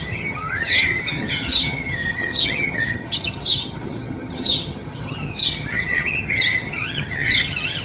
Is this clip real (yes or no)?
no